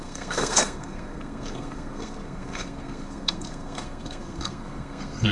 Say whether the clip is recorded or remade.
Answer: remade